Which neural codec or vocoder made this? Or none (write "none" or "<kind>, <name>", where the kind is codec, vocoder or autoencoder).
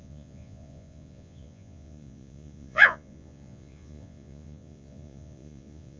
vocoder, Vocos